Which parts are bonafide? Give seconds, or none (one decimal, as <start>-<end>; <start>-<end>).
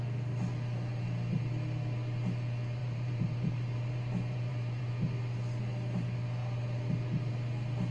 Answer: 0.0-2.8; 4.8-7.9